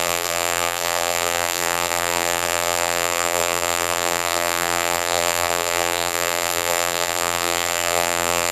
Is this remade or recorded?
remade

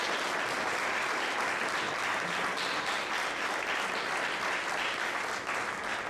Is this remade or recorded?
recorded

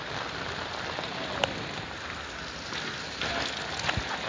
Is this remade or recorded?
recorded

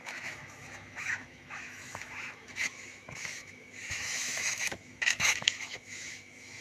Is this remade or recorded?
remade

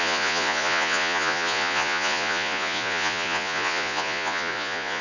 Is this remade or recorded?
remade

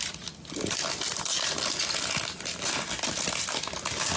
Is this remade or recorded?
recorded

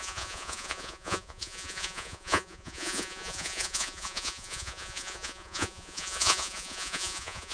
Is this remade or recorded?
remade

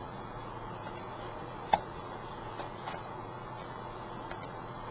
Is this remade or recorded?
remade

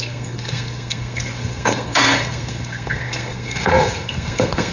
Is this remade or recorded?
remade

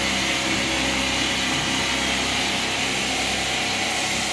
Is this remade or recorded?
recorded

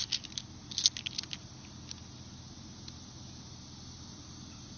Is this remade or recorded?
recorded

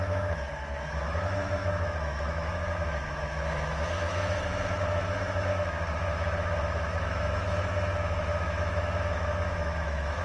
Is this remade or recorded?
remade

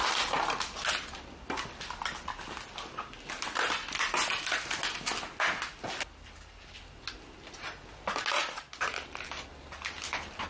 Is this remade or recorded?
recorded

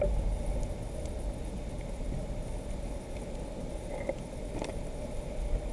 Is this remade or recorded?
recorded